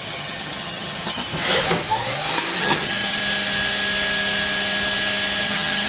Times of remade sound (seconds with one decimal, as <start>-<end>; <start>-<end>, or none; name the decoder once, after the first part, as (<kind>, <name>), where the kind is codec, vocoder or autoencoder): 0.0-1.2 (vocoder, HiFi-GAN); 2.6-3.2; 5.4-5.9